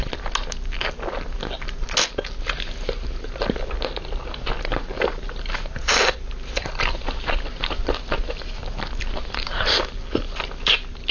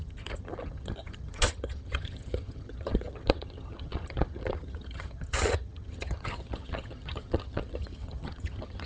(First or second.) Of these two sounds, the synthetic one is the second